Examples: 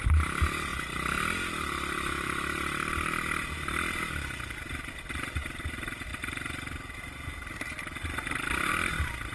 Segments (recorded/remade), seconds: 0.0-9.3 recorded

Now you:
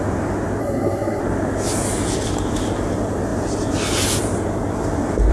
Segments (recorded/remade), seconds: 0.0-0.6 recorded; 0.6-1.2 remade; 1.2-5.3 recorded

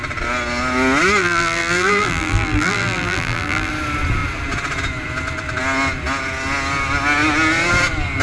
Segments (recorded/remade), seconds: 0.0-1.2 recorded; 1.2-3.7 remade; 3.7-8.2 recorded

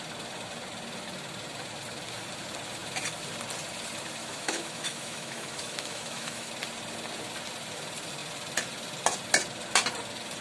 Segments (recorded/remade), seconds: 0.0-4.2 recorded; 4.2-6.5 remade; 6.5-10.4 recorded

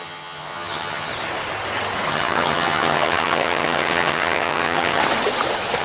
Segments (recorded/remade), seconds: 0.0-1.1 remade; 1.1-2.1 recorded; 2.1-5.0 remade; 5.0-5.8 recorded

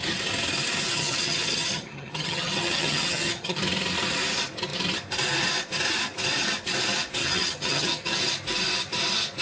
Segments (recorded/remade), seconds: 0.0-0.9 recorded; 0.9-3.6 remade; 3.6-7.2 recorded; 7.2-8.2 remade; 8.2-9.4 recorded

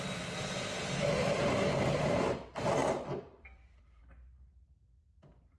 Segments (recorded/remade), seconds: 0.0-2.8 recorded; 2.8-4.0 remade; 4.0-5.6 recorded

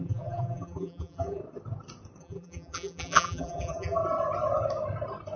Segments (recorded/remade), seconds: 0.0-1.4 remade; 1.4-2.2 recorded; 2.2-4.0 remade; 4.0-5.4 recorded